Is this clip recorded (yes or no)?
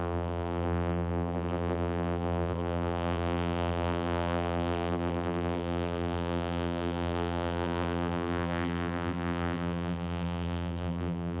no